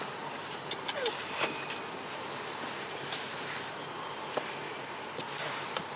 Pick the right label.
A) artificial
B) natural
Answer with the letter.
B